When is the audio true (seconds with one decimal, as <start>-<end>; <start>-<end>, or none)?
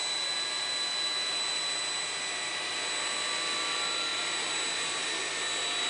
2.7-4.1; 5.2-5.9